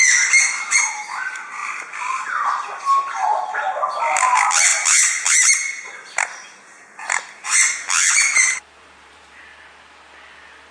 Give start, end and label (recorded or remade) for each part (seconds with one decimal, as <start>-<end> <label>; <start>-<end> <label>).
0.0-4.7 recorded; 4.7-9.4 remade; 9.4-10.7 recorded